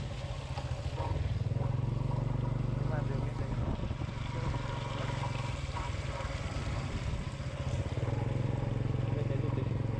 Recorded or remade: recorded